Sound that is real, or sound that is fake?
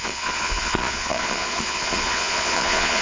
fake